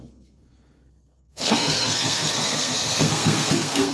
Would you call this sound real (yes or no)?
no